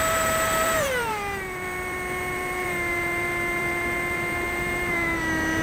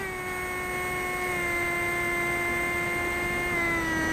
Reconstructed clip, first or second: first